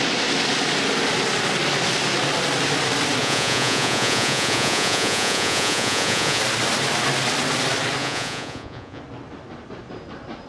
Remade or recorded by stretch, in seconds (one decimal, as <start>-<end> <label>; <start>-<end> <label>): 0.0-3.2 recorded; 3.2-6.4 remade; 6.4-8.0 recorded; 8.0-9.0 remade; 9.0-10.5 recorded